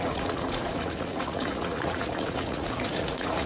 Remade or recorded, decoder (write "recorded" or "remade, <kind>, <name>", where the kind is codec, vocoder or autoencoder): remade, vocoder, Vocos